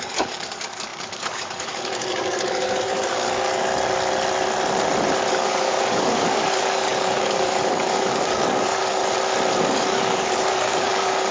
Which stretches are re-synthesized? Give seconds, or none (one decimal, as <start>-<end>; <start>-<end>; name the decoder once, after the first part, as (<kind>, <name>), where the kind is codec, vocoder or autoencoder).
0.0-3.7 (codec, DAC); 5.3-9.0; 9.6-11.3